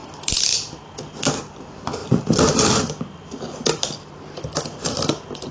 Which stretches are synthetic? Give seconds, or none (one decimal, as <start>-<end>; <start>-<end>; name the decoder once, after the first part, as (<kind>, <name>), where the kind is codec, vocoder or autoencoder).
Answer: none